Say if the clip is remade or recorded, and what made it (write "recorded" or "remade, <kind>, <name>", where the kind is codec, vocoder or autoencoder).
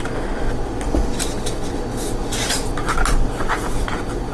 recorded